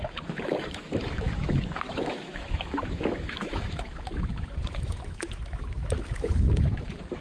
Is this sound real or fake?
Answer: fake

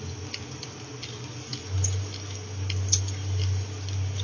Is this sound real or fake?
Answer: real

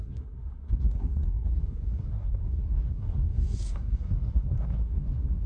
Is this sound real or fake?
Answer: fake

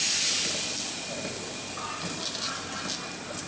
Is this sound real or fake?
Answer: real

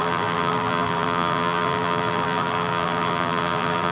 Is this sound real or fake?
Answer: fake